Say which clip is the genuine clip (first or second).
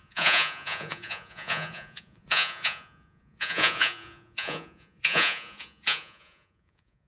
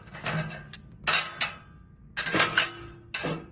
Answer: second